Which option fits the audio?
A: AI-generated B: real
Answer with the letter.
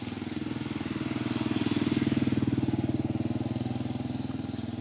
B